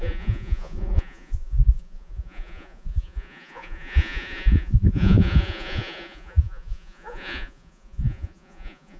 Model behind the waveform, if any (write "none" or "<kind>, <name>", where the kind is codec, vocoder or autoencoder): vocoder, Vocos